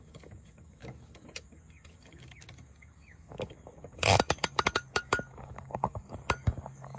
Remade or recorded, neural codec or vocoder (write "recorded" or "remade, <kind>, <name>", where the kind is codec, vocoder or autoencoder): remade, codec, DAC